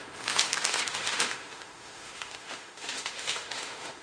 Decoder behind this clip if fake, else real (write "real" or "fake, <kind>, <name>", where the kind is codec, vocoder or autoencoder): fake, autoencoder, DAC-VAE